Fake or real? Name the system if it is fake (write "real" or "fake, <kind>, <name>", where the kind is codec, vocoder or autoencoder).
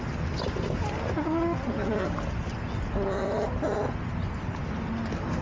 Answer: real